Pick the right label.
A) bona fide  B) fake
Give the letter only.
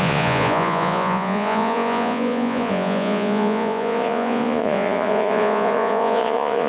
B